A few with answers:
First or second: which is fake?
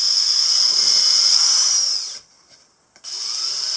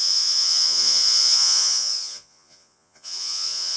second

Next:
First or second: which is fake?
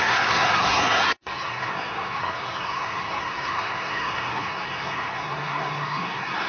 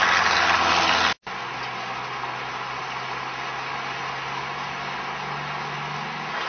first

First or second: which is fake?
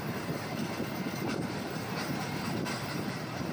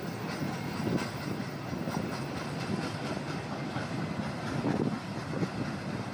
first